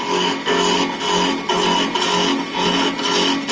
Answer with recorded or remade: recorded